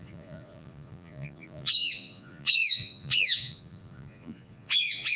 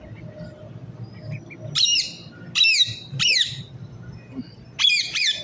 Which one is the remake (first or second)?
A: first